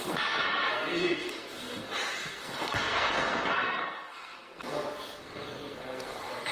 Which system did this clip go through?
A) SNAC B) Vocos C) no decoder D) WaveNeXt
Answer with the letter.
A